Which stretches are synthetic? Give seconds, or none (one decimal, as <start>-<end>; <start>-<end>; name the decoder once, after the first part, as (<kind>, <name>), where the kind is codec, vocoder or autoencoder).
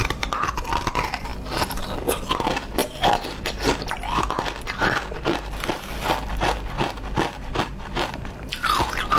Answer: none